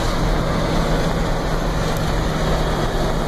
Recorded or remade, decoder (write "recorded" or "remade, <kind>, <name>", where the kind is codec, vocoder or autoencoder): recorded